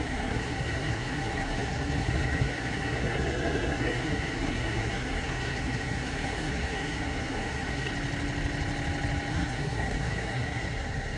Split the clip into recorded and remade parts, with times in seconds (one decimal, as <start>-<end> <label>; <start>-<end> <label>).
0.0-7.9 remade; 7.9-9.3 recorded; 9.3-11.2 remade